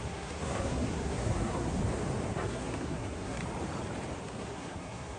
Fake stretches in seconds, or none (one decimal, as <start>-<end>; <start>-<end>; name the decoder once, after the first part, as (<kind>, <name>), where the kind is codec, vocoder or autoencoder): 0.0-1.8 (codec, SNAC); 2.3-3.4; 4.2-5.2